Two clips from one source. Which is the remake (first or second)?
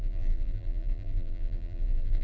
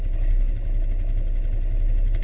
first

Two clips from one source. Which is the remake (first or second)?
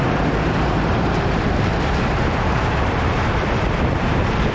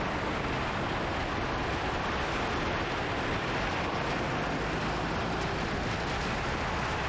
first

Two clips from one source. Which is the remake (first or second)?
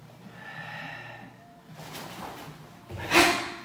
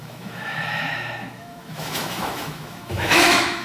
second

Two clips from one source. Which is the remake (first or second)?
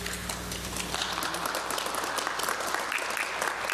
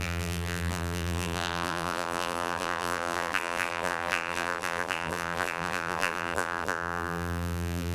second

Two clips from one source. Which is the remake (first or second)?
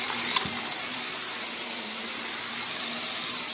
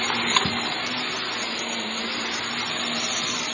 first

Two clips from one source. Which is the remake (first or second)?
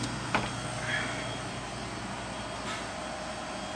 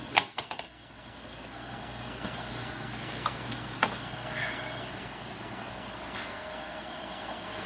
second